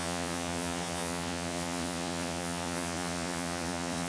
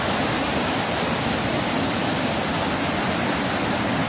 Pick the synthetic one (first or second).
first